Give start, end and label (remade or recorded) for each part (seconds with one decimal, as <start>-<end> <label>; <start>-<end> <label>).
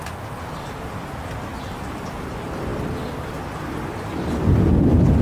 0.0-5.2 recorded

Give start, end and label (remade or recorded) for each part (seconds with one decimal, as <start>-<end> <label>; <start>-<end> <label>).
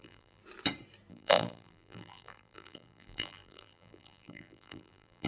0.0-0.4 remade; 0.4-1.1 recorded; 1.1-5.3 remade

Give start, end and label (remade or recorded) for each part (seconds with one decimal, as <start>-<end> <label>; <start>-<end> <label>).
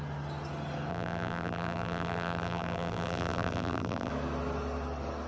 0.0-0.9 recorded; 0.9-4.1 remade; 4.1-5.3 recorded